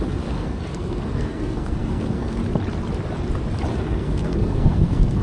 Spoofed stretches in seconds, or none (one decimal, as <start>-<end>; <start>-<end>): 0.0-2.4; 3.7-5.2